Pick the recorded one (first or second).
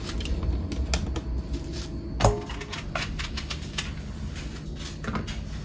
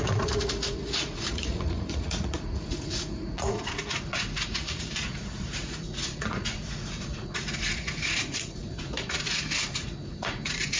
first